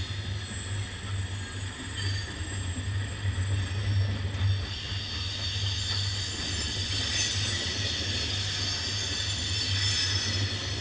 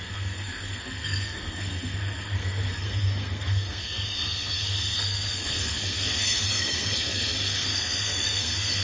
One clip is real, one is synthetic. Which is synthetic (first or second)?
second